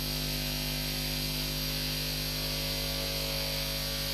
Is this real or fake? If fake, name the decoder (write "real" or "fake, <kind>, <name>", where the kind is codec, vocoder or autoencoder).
real